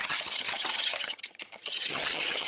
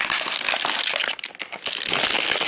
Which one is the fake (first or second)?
first